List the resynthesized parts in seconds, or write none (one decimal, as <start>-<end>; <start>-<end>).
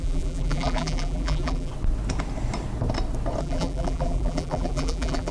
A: 0.0-1.7; 3.4-5.3